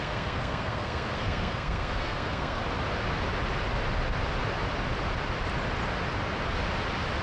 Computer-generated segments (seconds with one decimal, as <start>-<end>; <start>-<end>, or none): 0.0-2.6